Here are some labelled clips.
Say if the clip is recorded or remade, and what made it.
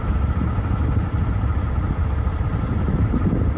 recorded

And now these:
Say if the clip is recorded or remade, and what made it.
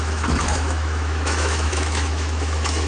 remade, autoencoder, DAC-VAE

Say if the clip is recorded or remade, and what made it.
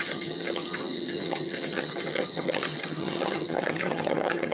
remade, vocoder, HiFi-GAN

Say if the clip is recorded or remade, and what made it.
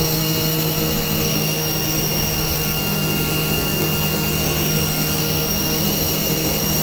remade, codec, SNAC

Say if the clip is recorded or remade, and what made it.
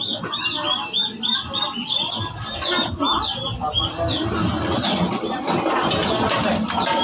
recorded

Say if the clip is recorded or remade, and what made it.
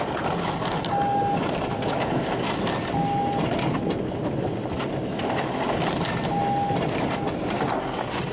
recorded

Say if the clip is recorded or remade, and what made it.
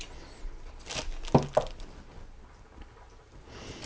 recorded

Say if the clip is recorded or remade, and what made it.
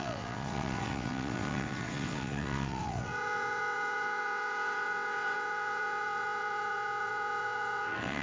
remade, vocoder, WaveNeXt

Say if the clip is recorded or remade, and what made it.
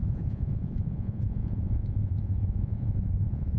remade, vocoder, Vocos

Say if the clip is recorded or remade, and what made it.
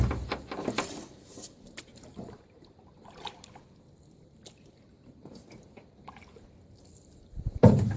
recorded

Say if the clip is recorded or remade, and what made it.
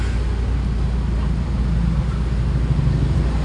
recorded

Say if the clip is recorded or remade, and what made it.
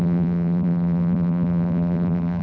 remade, vocoder, BigVGAN v2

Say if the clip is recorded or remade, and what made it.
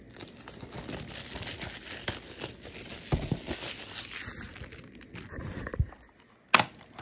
recorded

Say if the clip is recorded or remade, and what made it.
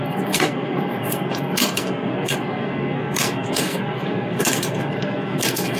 remade, codec, SNAC